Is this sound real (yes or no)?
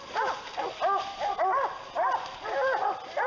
yes